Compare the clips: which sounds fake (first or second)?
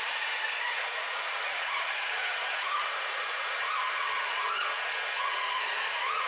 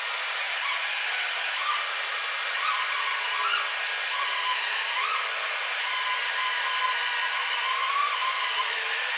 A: first